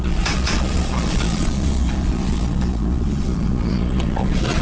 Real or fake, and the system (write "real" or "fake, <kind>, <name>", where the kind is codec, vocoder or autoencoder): fake, vocoder, Vocos